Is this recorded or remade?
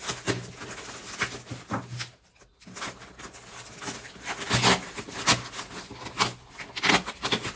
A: recorded